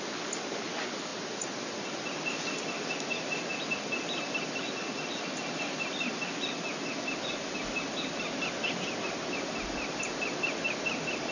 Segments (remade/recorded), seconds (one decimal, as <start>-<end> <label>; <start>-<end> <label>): 0.0-11.3 recorded